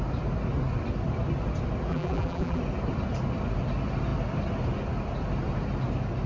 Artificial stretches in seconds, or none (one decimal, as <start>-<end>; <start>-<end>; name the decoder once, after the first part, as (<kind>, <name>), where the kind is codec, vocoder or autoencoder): 1.9-2.6 (vocoder, BigVGAN v2)